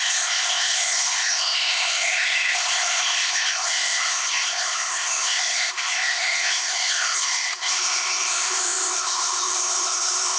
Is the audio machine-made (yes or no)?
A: yes